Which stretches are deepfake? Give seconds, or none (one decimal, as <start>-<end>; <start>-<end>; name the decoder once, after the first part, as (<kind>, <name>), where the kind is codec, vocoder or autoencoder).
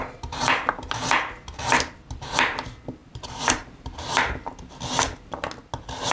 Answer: 0.0-0.7 (vocoder, BigVGAN v2); 3.0-4.0